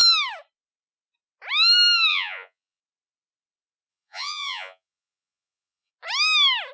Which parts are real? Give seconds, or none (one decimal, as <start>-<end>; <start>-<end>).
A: 0.0-2.1; 2.8-3.9; 5.9-6.7